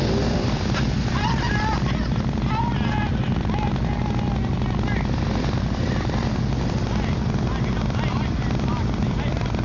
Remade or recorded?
recorded